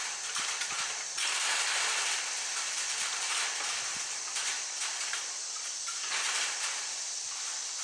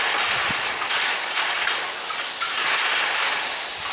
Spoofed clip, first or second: first